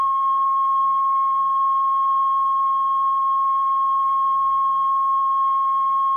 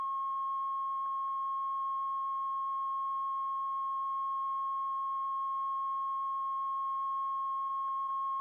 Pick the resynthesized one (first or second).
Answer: first